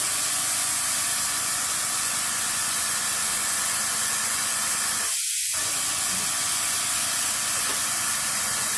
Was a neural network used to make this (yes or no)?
yes